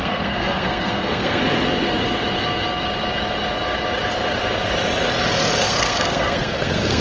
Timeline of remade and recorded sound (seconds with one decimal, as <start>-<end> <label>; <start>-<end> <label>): 0.0-1.4 remade; 1.4-5.6 recorded; 5.6-7.0 remade